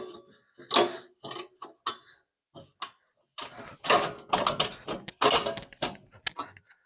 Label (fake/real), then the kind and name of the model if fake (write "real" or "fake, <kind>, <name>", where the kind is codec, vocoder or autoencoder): real